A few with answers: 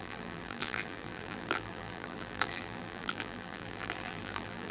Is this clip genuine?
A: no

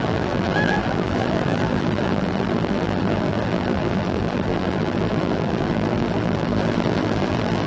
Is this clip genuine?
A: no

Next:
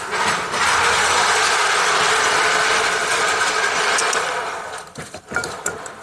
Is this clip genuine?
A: yes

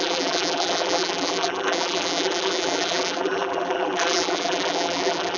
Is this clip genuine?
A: no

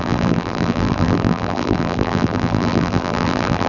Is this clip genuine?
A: no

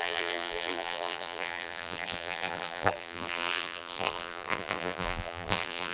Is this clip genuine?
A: no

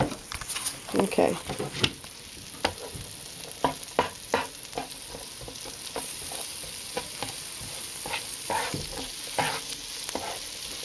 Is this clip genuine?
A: yes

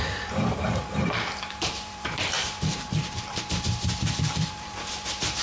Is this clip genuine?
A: no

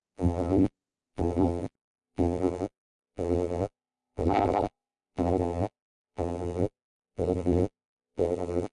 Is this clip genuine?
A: no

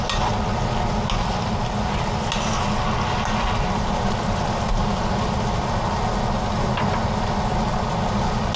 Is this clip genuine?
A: yes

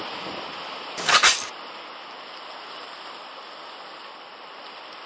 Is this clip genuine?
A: no